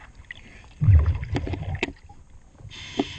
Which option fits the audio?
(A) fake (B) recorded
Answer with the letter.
B